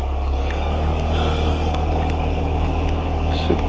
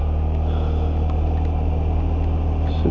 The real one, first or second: second